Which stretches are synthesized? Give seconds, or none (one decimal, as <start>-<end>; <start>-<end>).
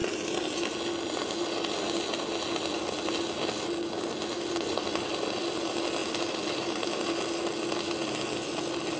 none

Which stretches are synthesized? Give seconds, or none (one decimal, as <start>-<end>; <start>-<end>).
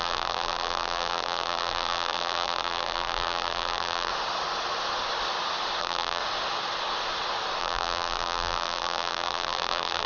0.0-4.1; 5.8-6.2; 7.6-10.1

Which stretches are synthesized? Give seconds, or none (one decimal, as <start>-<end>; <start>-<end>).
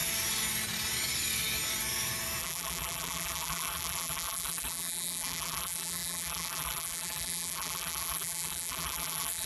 2.4-9.5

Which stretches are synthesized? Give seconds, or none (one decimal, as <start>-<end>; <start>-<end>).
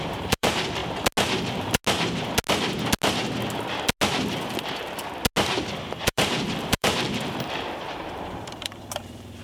0.0-0.8; 1.4-1.8; 5.8-9.4